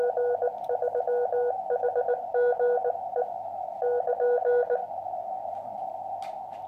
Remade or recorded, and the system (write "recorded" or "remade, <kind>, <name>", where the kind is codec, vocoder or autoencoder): recorded